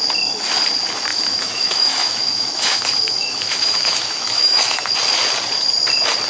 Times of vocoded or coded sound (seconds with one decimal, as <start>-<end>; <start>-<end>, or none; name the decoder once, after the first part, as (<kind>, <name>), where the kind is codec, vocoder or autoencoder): 1.1-4.9 (autoencoder, DAC-VAE)